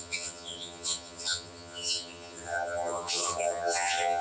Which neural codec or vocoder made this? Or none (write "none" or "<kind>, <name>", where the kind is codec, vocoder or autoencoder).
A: vocoder, HiFi-GAN